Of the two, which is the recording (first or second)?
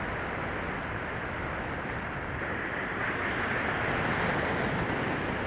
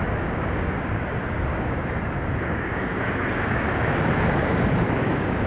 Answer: first